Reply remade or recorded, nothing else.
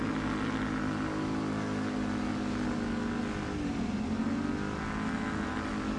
recorded